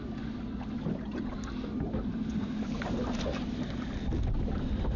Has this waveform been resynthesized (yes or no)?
no